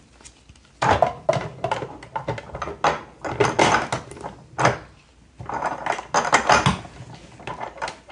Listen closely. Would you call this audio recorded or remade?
recorded